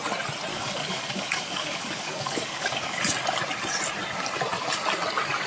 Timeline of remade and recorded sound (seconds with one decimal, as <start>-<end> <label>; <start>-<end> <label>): 0.0-0.5 recorded; 0.5-3.0 remade; 3.0-5.5 recorded